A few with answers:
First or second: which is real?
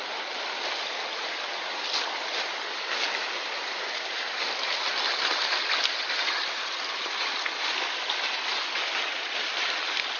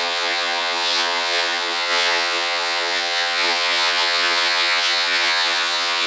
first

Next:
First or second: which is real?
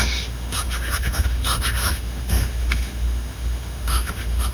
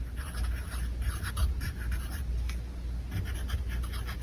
second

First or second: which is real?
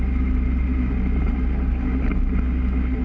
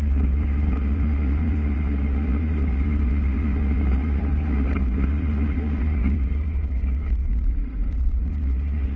first